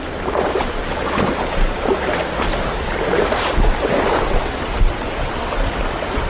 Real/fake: real